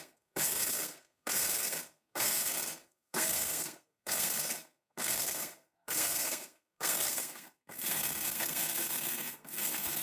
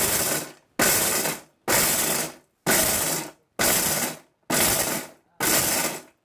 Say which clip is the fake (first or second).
first